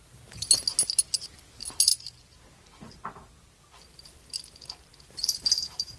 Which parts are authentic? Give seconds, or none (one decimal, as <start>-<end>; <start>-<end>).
0.0-6.0